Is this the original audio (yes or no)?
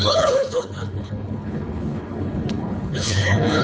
no